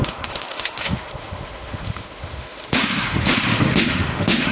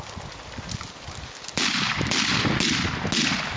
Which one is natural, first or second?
second